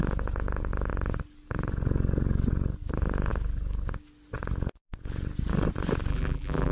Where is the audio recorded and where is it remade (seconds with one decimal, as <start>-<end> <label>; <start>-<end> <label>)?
0.0-6.1 recorded; 6.1-6.7 remade